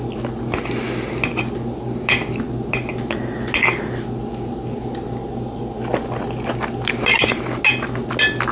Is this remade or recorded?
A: recorded